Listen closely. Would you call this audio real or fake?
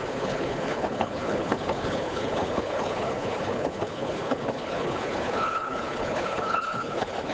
fake